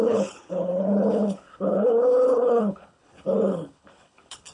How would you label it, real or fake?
fake